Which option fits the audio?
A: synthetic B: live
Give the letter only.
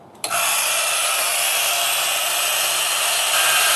B